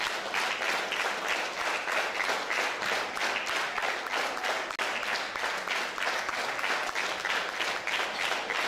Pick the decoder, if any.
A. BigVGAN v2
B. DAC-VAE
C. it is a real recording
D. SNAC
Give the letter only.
C